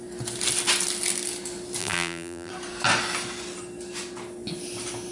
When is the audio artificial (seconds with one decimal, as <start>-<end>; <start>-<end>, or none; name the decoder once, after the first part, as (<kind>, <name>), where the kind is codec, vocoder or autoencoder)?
1.8-2.5 (vocoder, BigVGAN v2)